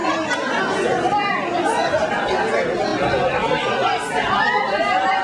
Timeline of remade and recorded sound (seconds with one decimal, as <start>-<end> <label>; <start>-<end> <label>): 0.0-0.6 remade; 0.6-5.2 recorded